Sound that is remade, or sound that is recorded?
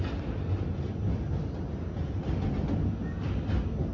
recorded